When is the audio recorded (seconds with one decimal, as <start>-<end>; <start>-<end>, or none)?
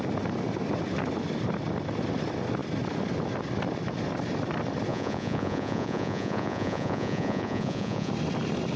0.0-4.9; 8.1-8.8